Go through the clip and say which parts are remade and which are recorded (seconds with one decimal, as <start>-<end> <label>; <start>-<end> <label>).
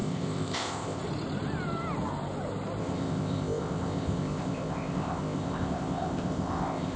0.0-1.0 remade; 1.0-2.8 recorded; 2.8-7.0 remade